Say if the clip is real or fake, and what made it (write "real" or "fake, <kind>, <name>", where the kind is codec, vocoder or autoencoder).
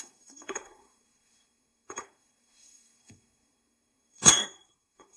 fake, codec, SNAC